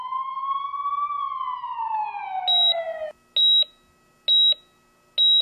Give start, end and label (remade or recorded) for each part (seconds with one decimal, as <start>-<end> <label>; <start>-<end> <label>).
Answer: 0.0-5.4 recorded